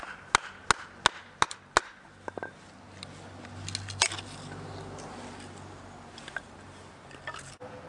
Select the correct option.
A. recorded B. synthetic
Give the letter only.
A